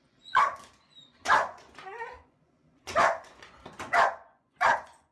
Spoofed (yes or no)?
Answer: yes